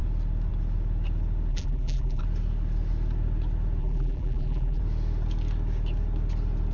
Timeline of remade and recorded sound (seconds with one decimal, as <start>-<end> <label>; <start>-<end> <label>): 0.0-1.5 recorded; 1.5-2.2 remade; 2.2-3.8 recorded; 3.8-4.8 remade; 4.8-6.7 recorded